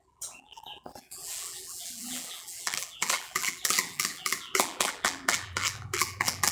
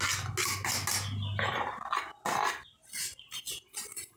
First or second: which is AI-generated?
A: first